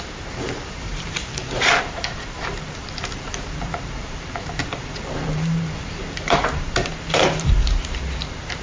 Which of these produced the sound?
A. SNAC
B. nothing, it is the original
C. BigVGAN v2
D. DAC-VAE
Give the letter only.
C